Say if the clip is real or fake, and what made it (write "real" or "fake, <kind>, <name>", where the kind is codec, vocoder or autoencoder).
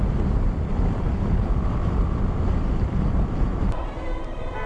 fake, vocoder, BigVGAN v2